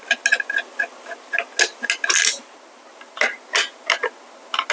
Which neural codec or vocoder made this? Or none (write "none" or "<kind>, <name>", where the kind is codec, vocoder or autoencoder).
none